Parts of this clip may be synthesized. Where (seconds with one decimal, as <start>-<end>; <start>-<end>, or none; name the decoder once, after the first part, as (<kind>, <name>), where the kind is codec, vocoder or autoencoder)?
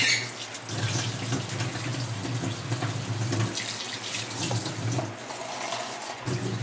5.2-6.6 (vocoder, Vocos)